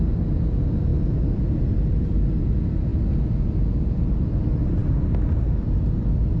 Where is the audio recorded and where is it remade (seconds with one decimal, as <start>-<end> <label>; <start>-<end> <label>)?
0.0-0.9 recorded; 0.9-2.3 remade; 2.3-6.4 recorded